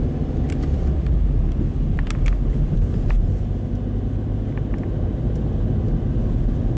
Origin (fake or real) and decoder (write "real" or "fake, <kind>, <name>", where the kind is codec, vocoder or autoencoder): real